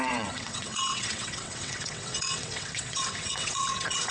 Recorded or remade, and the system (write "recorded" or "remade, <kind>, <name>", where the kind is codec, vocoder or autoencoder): remade, vocoder, WaveNeXt